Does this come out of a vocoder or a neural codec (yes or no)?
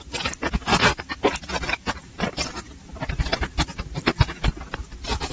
yes